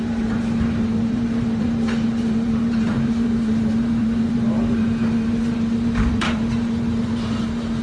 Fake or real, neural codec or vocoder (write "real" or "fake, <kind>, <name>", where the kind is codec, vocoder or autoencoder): fake, vocoder, BigVGAN v2